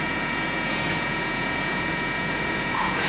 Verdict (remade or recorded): remade